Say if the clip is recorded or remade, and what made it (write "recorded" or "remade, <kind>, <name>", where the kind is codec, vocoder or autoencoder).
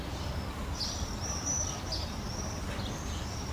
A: recorded